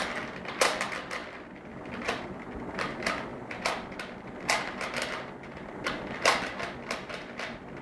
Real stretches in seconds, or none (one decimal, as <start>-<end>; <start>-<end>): 0.0-7.8